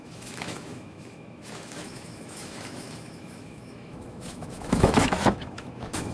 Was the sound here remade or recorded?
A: remade